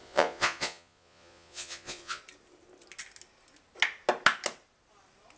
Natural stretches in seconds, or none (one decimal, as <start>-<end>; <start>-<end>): 2.2-5.4